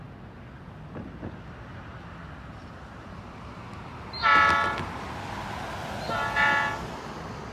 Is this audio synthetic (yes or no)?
no